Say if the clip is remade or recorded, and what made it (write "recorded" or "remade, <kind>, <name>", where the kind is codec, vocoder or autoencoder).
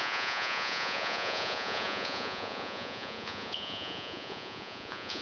remade, vocoder, Vocos